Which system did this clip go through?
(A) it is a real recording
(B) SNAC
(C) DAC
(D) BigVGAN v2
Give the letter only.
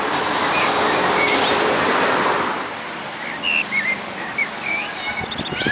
D